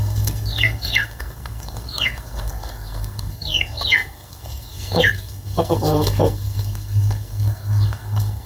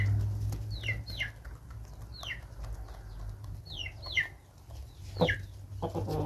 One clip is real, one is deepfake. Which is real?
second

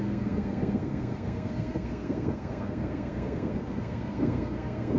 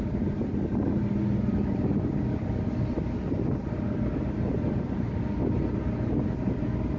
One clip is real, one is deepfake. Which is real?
second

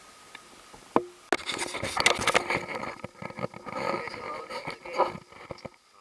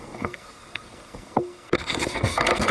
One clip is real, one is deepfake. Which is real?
first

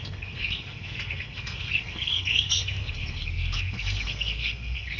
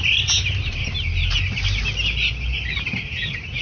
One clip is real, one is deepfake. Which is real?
second